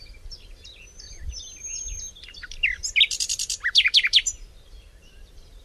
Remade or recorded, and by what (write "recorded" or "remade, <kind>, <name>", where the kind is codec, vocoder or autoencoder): remade, vocoder, BigVGAN v2